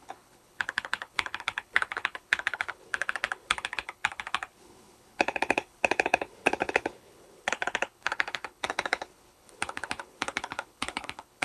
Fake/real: fake